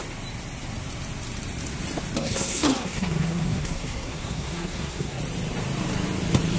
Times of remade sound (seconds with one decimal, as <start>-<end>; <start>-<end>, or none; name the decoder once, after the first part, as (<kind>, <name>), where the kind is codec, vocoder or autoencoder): 2.2-5.2 (codec, SNAC)